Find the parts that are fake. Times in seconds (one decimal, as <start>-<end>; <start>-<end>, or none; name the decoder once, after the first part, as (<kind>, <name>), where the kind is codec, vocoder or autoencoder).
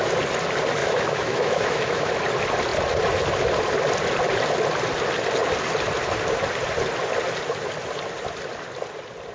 0.8-2.1 (autoencoder, DAC-VAE)